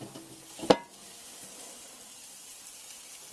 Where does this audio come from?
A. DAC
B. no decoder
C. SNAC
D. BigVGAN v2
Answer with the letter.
B